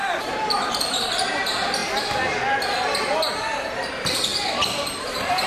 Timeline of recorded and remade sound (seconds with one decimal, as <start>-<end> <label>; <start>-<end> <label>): 0.0-1.8 remade; 1.8-3.3 recorded; 3.3-4.3 remade; 4.3-4.8 recorded; 4.8-5.5 remade